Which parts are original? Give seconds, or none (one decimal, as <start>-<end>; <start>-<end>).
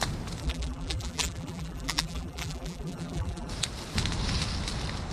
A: 0.0-0.4; 3.5-5.1